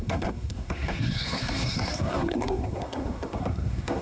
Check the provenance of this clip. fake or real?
fake